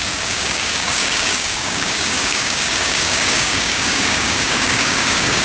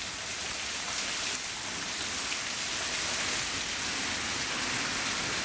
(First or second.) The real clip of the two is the second